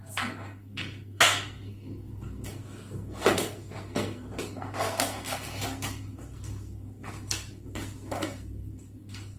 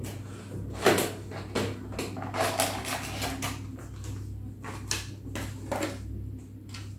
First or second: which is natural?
second